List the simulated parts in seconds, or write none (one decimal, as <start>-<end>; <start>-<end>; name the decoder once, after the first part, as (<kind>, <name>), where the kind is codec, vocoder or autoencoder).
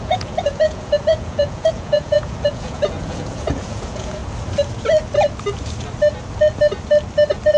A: 0.0-4.2 (vocoder, Vocos)